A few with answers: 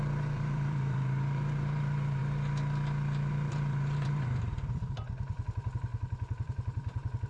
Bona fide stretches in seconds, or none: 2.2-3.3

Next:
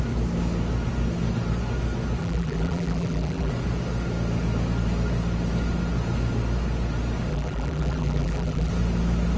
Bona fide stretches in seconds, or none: 0.0-2.2; 3.5-7.3; 8.7-9.4